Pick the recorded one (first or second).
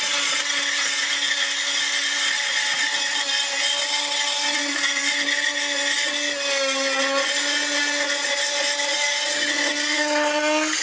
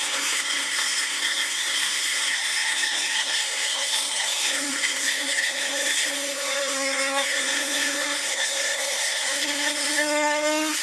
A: first